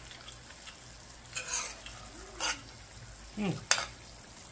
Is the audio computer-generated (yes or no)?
no